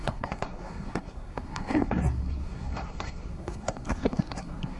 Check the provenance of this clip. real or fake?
fake